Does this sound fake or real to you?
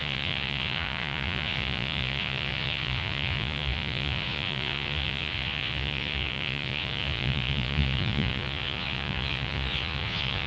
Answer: fake